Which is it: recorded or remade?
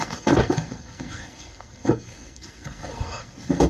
remade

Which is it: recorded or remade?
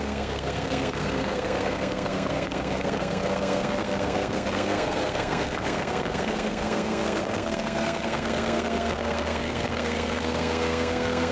remade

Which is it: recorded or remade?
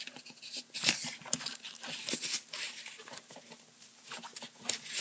recorded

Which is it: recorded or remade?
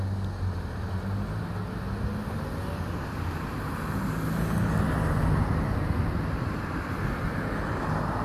recorded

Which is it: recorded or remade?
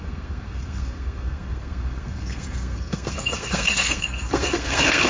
remade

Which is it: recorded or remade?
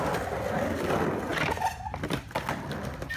recorded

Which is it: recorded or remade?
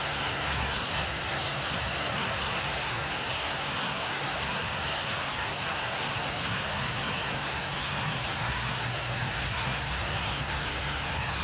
remade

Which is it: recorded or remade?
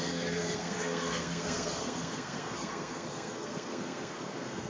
remade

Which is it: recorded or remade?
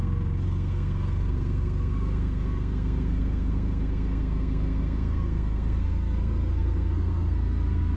remade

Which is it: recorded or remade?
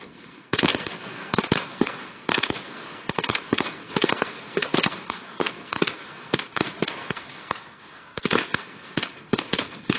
remade